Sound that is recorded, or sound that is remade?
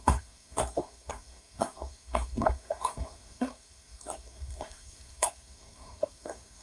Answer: remade